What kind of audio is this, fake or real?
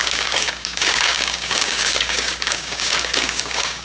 fake